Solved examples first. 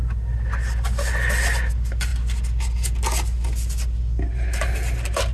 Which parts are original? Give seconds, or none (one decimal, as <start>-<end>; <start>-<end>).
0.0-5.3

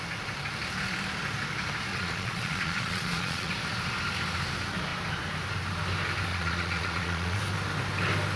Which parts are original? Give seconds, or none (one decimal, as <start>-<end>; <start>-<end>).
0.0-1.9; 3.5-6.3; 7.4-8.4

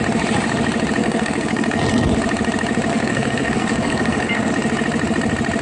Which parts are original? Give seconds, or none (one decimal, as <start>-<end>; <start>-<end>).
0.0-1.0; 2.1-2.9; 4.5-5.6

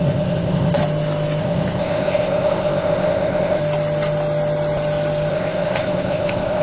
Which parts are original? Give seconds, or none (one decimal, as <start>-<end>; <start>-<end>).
0.8-1.4; 3.6-5.3

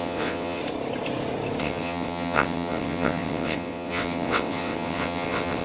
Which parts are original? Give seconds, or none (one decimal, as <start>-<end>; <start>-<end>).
0.6-1.6

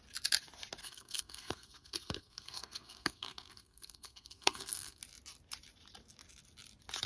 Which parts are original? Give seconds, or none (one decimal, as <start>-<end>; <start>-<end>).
0.0-0.8; 5.0-7.1